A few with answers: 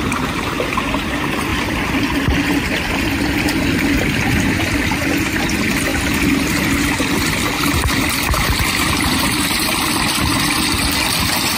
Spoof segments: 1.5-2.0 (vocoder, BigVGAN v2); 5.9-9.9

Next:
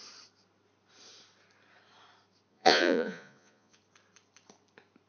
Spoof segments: 2.5-3.8 (vocoder, Vocos)

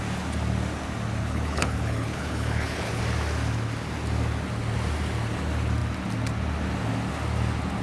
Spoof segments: 1.2-3.0 (codec, HILCodec)

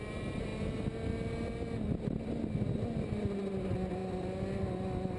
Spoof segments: none